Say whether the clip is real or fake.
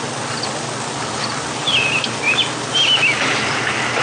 real